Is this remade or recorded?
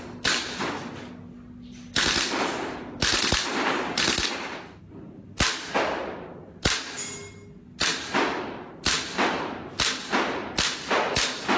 recorded